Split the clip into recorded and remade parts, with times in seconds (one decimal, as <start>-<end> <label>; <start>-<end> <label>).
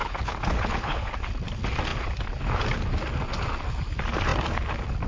0.0-1.1 remade; 1.1-5.1 recorded